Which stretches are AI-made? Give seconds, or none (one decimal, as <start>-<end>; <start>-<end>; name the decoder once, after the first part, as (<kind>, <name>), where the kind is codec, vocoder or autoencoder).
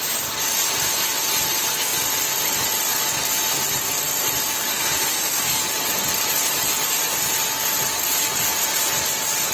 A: 4.7-5.6 (codec, SNAC)